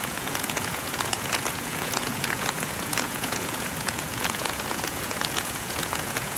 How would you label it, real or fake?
fake